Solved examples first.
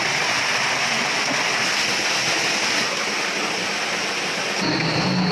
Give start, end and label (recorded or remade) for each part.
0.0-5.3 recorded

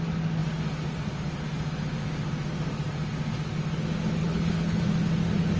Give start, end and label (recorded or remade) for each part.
0.0-4.2 recorded; 4.2-4.8 remade; 4.8-5.6 recorded